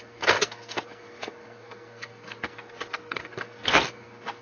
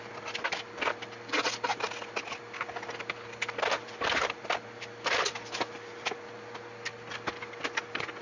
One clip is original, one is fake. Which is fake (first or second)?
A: first